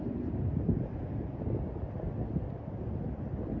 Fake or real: real